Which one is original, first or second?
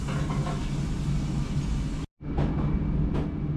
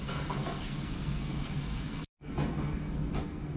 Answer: first